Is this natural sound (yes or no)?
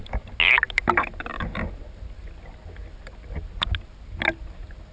yes